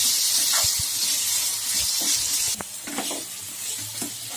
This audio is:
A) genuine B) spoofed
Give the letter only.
A